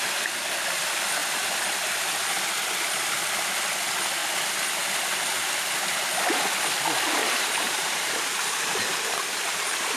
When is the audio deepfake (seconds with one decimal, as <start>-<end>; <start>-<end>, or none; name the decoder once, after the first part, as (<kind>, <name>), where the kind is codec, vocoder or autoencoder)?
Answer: 7.2-10.0 (vocoder, BigVGAN v2)